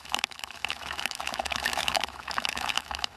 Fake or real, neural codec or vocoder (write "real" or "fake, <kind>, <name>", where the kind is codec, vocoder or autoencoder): fake, autoencoder, DAC-VAE